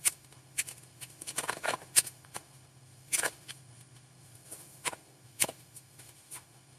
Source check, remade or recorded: remade